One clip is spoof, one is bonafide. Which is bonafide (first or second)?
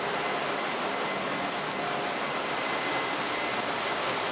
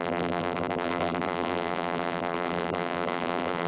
first